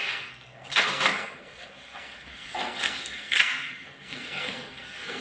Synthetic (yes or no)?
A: yes